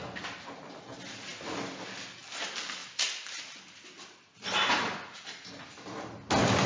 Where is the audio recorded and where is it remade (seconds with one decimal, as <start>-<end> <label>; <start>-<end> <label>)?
0.0-2.8 recorded; 2.8-4.5 remade; 4.5-6.7 recorded

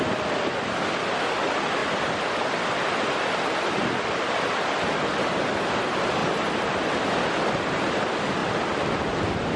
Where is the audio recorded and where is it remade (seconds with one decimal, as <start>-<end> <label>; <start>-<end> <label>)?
0.0-6.2 recorded; 6.2-7.9 remade; 7.9-8.4 recorded; 8.4-8.9 remade; 8.9-9.6 recorded

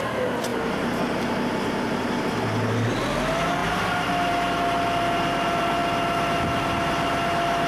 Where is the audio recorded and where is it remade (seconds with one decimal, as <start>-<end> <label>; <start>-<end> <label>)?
0.0-7.7 recorded

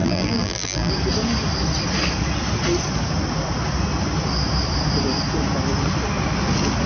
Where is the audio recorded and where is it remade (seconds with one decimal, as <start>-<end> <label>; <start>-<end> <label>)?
0.0-0.9 remade; 0.9-6.9 recorded

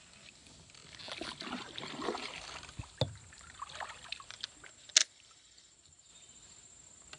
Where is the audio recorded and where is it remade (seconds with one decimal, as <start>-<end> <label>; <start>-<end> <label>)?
0.0-5.0 recorded; 5.0-6.1 remade; 6.1-7.2 recorded

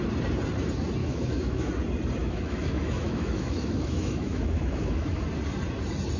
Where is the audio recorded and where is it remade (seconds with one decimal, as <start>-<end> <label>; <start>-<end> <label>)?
0.0-1.0 recorded; 1.0-1.7 remade; 1.7-2.2 recorded; 2.2-5.2 remade; 5.2-6.2 recorded

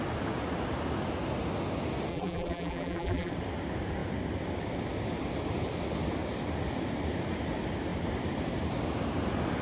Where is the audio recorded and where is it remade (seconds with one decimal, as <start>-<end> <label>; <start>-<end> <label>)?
0.0-2.1 recorded; 2.1-3.3 remade; 3.3-9.6 recorded

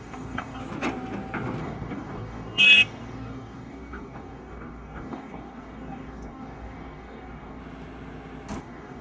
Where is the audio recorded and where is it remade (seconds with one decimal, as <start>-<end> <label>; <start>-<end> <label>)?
0.0-0.6 remade; 0.6-1.6 recorded; 1.6-7.6 remade; 7.6-8.6 recorded; 8.6-9.0 remade